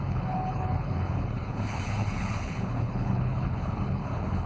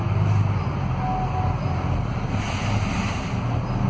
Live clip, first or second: second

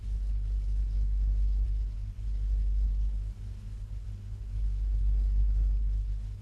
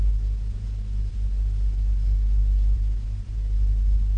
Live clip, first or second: second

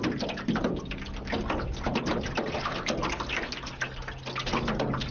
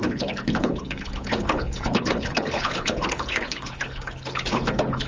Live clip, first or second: first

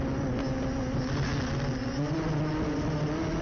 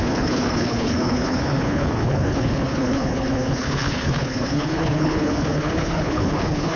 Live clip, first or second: first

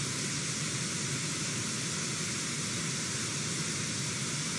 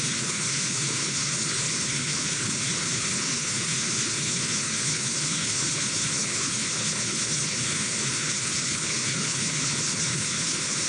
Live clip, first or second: first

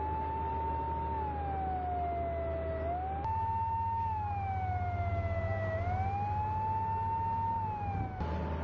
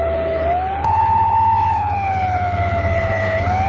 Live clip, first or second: first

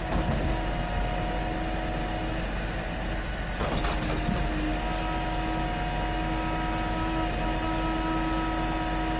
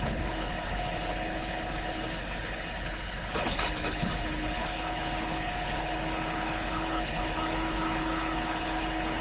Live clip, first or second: first